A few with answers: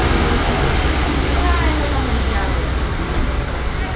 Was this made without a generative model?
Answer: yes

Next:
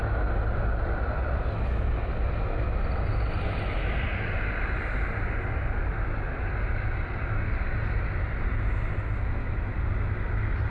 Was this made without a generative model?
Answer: yes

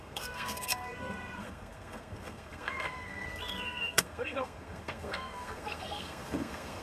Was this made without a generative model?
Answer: no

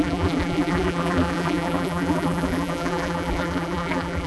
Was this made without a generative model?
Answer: no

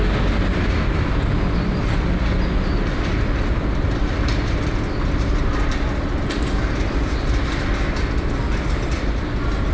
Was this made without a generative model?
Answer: yes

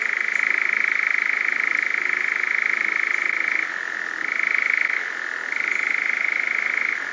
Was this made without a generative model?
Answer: yes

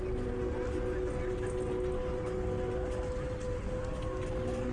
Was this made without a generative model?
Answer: yes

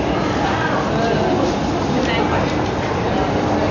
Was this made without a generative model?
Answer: yes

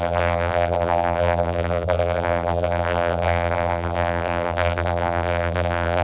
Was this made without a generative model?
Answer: no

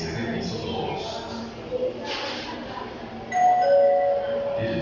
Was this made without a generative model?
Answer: yes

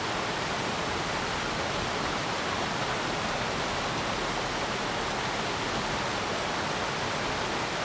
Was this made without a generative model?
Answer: yes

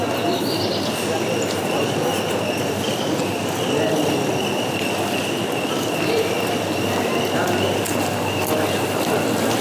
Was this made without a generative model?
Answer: yes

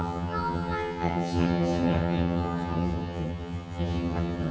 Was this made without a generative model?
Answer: no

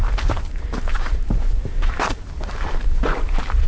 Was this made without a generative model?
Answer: no